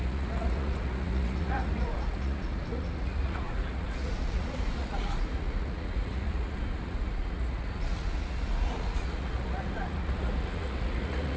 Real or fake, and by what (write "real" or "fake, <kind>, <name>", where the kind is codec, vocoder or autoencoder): fake, vocoder, Vocos